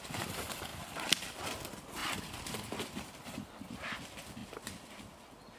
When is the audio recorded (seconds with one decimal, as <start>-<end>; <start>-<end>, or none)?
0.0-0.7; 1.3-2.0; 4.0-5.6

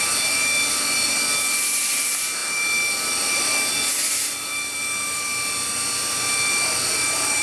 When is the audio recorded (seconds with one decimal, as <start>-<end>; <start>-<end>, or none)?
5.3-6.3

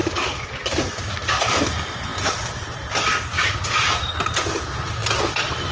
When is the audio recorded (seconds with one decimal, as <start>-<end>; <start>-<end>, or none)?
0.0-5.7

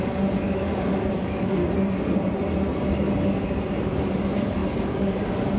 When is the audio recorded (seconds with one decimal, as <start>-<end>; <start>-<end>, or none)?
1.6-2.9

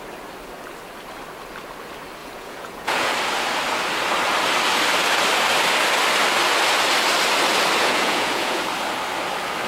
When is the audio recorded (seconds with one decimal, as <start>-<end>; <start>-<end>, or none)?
0.0-2.2; 3.1-7.8; 8.6-9.7

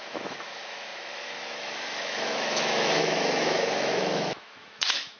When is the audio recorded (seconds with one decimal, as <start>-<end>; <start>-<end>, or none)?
none

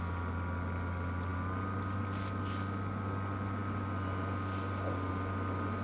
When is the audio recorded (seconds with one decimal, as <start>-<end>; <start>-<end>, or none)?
0.0-5.8

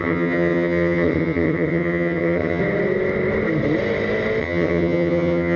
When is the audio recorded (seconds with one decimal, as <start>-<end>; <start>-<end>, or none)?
2.6-4.4